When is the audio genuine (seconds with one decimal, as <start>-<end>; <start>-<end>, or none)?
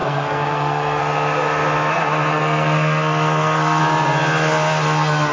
1.0-2.3; 3.8-5.3